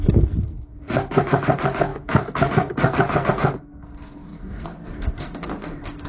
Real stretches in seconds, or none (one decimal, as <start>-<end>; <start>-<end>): none